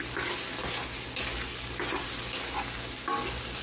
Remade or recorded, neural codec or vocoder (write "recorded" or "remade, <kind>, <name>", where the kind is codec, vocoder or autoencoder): recorded